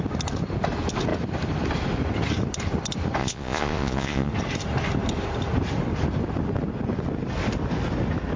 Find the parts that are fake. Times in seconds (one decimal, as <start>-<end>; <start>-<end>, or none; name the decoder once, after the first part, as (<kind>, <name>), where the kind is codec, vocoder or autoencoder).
3.2-4.3 (vocoder, Vocos)